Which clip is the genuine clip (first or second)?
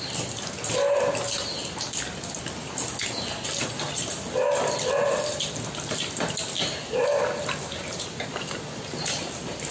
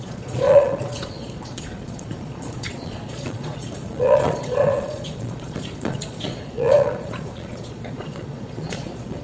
first